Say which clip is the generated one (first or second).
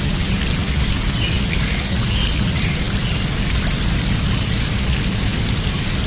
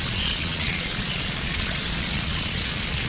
second